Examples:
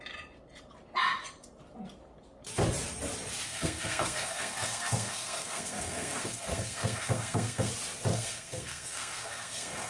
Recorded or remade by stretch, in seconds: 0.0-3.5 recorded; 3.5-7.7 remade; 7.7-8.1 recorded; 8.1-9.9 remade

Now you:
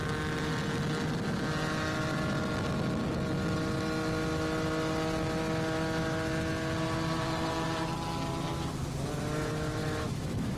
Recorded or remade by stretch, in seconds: 0.0-9.8 recorded; 9.8-10.6 remade

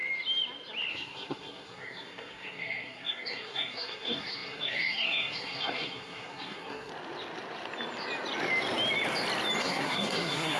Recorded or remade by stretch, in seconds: 0.0-0.9 recorded; 0.9-6.9 remade; 6.9-9.6 recorded; 9.6-10.6 remade

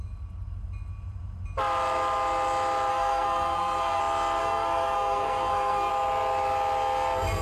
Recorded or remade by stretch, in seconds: 0.0-2.9 recorded; 2.9-4.0 remade; 4.0-4.4 recorded; 4.4-5.9 remade; 5.9-7.4 recorded

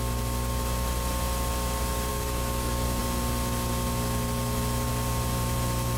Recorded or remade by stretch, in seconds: 0.0-2.1 recorded; 2.1-3.0 remade; 3.0-6.0 recorded

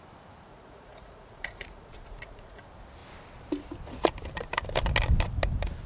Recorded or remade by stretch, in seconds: 0.0-0.5 recorded; 0.5-2.6 remade; 2.6-5.9 recorded

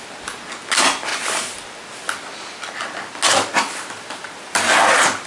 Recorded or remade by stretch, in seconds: 0.0-5.3 recorded

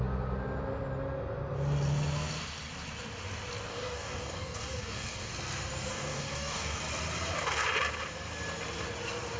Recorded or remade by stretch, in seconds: 0.0-3.7 recorded; 3.7-5.3 remade; 5.3-5.9 recorded; 5.9-6.8 remade; 6.8-9.4 recorded